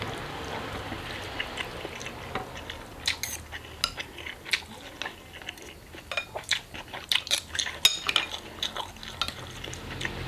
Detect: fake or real real